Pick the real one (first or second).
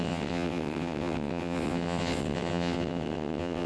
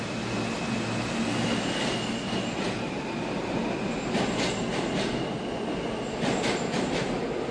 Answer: second